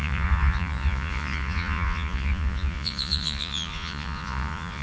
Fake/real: fake